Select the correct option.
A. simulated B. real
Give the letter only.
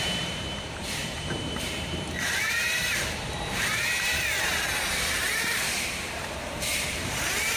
A